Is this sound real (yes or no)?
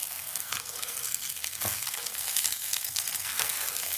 no